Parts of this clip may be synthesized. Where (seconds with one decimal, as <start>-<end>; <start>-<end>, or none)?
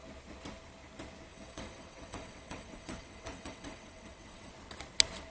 1.3-4.5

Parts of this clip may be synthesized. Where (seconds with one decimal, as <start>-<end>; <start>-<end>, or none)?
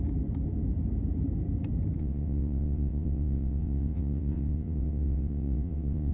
2.0-6.1